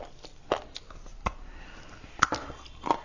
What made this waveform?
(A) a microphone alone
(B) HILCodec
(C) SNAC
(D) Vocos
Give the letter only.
A